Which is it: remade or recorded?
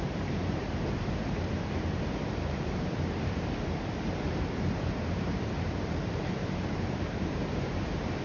remade